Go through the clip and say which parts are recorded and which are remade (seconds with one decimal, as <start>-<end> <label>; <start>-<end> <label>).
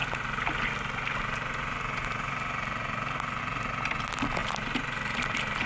0.0-5.7 recorded